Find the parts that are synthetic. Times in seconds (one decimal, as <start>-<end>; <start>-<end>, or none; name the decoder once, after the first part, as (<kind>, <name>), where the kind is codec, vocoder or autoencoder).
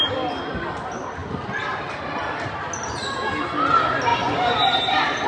4.1-5.3 (vocoder, BigVGAN v2)